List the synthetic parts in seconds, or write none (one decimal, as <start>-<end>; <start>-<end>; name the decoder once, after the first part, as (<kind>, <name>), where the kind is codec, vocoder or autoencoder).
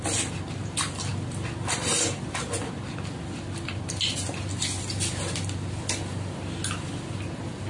none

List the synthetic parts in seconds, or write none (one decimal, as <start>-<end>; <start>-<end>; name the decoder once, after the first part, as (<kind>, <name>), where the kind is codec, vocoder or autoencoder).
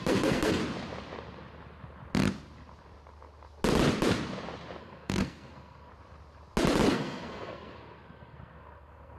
0.0-0.6 (codec, SNAC); 4.8-5.9; 6.9-9.2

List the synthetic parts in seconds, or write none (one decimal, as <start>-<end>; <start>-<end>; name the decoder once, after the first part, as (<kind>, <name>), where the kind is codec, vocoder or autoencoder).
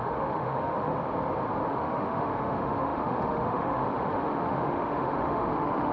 0.0-0.9 (autoencoder, DAC-VAE); 1.7-5.9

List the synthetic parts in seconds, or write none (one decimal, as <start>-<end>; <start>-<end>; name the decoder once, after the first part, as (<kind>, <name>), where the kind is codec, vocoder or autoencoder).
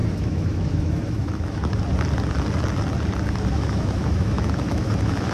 0.0-1.6 (autoencoder, DAC-VAE); 3.5-5.3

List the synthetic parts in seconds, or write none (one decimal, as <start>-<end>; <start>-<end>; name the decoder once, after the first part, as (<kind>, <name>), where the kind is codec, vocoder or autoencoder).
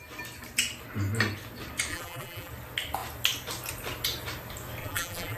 1.9-2.5 (vocoder, BigVGAN v2); 4.8-5.4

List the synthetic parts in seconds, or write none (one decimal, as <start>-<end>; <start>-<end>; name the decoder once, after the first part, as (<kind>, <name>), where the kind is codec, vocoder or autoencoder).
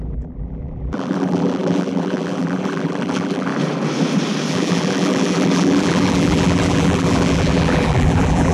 0.0-3.5 (vocoder, BigVGAN v2); 4.5-8.5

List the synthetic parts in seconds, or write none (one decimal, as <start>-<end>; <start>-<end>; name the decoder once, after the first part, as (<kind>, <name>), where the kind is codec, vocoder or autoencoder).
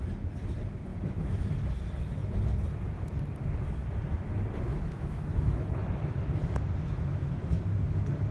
0.9-1.4 (autoencoder, DAC-VAE); 4.7-7.6